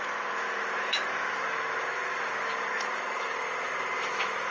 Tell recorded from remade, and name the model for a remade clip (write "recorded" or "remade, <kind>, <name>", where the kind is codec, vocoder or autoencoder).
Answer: remade, autoencoder, DAC-VAE